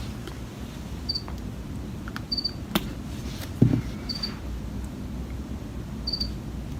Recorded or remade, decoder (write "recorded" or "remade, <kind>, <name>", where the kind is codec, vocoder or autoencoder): recorded